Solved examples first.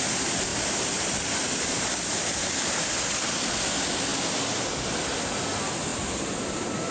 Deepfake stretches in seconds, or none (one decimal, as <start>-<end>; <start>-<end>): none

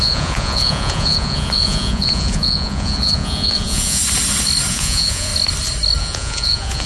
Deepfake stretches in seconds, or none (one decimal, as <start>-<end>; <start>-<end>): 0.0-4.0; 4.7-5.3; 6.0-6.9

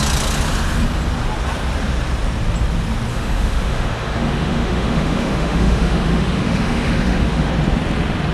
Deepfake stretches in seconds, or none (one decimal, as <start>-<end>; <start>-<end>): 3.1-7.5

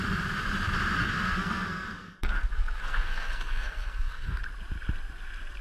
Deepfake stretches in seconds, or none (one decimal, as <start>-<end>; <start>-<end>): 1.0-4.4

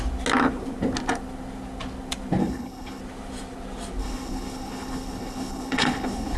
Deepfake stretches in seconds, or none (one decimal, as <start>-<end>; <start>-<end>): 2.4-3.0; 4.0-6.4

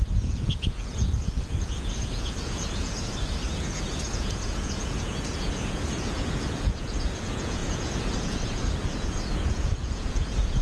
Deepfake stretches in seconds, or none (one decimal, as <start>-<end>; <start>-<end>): 0.0-10.6

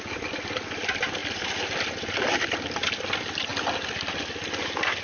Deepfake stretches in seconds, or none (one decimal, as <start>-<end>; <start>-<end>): none